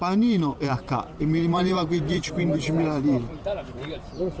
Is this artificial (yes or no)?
yes